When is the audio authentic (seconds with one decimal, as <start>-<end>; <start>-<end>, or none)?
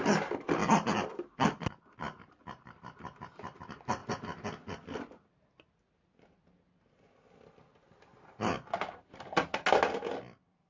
0.0-0.6; 2.8-10.7